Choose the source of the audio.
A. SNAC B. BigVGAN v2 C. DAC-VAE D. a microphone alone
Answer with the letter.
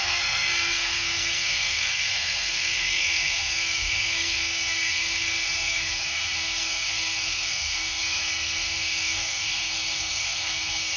A